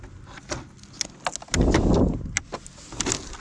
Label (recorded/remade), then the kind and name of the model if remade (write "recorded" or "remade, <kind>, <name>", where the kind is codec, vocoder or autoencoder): recorded